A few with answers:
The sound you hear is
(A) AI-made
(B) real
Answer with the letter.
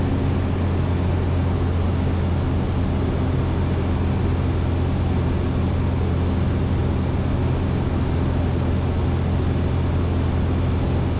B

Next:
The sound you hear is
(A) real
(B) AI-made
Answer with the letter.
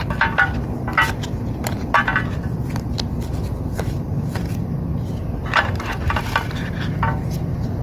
B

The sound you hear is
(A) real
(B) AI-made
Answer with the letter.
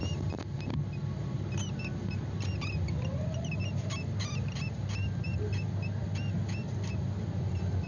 A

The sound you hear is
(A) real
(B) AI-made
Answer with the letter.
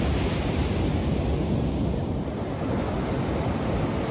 A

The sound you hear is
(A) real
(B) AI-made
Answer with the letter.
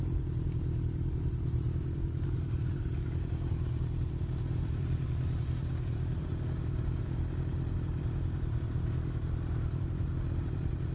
B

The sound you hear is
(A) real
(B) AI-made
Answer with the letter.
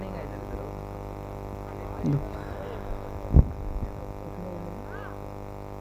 A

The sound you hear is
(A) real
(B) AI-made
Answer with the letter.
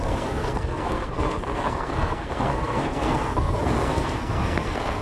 B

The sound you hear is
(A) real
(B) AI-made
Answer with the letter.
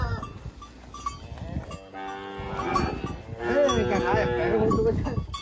A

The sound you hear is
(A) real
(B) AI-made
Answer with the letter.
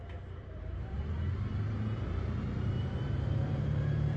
B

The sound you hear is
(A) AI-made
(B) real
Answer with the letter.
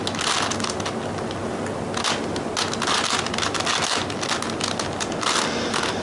B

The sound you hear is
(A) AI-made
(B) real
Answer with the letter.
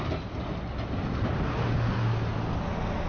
B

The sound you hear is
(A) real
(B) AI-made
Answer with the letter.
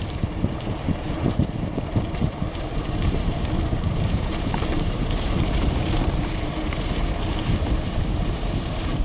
B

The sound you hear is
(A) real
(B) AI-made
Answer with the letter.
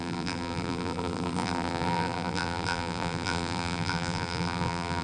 B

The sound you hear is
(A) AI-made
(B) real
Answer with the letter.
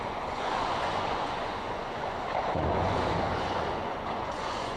A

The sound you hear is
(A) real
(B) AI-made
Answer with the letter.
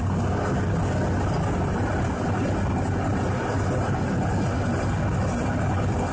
A